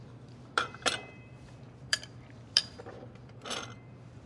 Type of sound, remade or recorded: remade